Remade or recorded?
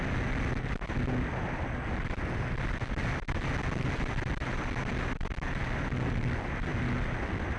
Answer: recorded